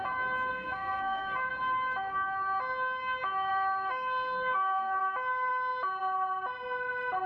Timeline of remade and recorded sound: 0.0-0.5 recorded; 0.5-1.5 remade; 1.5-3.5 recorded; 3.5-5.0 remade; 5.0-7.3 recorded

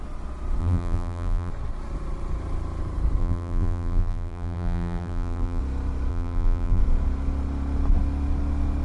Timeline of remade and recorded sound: 0.0-0.6 recorded; 0.6-1.5 remade; 1.5-3.2 recorded; 3.2-5.6 remade; 5.6-6.1 recorded; 6.1-6.8 remade; 6.8-8.8 recorded

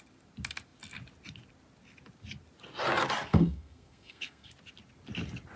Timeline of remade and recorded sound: 0.0-3.3 recorded; 3.3-4.5 remade; 4.5-5.6 recorded

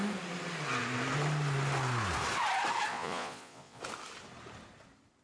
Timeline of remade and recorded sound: 0.0-2.9 recorded; 2.9-3.8 remade; 3.8-5.2 recorded

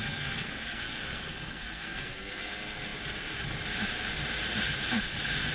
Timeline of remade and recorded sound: 0.0-2.5 remade; 2.5-5.5 recorded